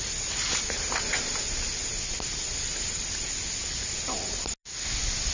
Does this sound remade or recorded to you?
recorded